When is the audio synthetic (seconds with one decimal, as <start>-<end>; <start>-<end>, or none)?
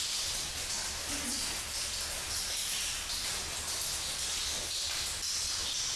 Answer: none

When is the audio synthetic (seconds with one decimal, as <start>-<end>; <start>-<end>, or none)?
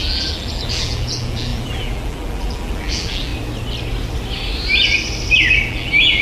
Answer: 0.0-3.3; 5.7-6.2